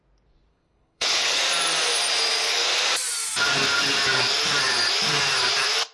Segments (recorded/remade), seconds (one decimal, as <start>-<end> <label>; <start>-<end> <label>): 0.0-0.5 recorded; 0.5-1.4 remade; 1.4-5.9 recorded